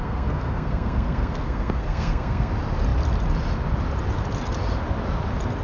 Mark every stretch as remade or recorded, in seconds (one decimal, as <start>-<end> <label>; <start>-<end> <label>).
0.0-2.5 remade; 2.5-5.6 recorded